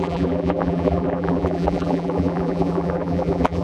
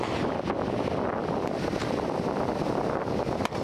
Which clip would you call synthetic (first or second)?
first